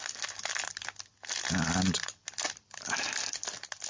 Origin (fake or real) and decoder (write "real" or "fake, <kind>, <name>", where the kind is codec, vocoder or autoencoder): real